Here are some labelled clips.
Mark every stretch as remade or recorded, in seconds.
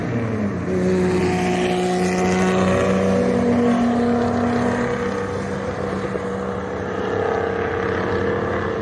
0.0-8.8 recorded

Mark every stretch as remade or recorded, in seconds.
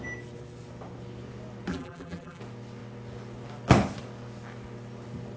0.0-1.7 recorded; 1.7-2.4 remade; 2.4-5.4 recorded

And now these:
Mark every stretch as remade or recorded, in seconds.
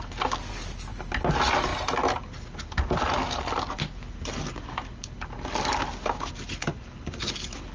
0.0-7.7 recorded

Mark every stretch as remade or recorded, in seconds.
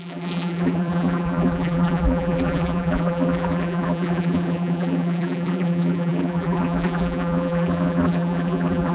0.0-8.9 remade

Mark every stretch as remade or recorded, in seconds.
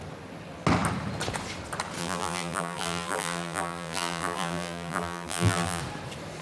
0.0-2.0 recorded; 2.0-5.8 remade; 5.8-6.4 recorded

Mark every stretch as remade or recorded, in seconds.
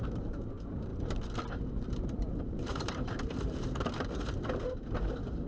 0.0-0.9 remade; 0.9-1.5 recorded; 1.5-5.5 remade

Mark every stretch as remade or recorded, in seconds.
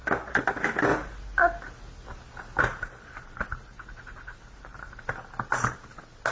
0.0-6.3 recorded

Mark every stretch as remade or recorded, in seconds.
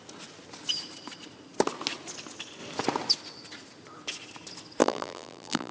0.0-4.8 recorded; 4.8-5.7 remade